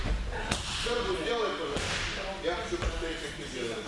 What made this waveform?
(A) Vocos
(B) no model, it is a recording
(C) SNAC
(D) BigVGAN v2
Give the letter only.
B